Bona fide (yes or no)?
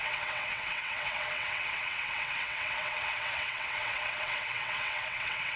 no